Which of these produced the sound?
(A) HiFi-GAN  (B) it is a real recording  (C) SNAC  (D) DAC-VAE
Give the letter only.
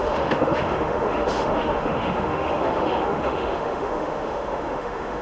D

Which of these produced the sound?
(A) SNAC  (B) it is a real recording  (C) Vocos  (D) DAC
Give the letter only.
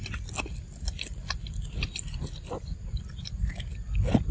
B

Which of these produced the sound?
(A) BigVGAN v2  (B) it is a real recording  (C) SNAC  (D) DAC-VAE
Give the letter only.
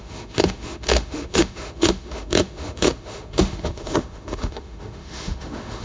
D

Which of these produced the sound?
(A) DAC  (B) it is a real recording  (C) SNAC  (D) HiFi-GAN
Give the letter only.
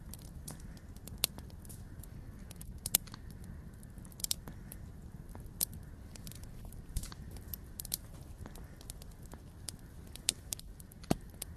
B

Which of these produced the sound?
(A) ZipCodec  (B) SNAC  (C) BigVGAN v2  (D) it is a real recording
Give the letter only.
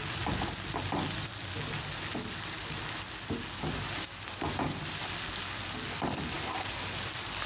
D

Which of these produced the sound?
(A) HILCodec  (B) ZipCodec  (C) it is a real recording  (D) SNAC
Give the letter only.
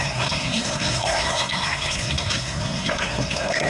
D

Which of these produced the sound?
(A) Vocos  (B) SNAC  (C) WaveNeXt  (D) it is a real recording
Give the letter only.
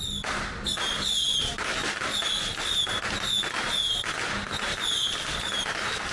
D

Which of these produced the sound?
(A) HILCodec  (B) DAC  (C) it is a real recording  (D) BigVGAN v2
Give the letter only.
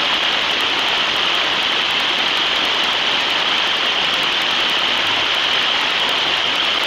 C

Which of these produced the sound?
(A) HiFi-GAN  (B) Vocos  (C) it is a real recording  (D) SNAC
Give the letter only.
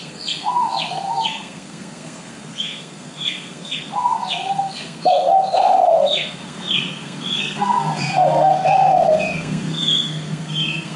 D